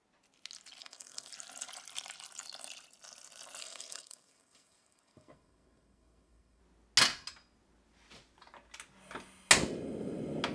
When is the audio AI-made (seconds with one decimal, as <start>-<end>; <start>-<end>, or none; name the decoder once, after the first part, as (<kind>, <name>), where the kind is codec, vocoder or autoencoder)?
0.8-1.3 (codec, SNAC); 3.6-6.6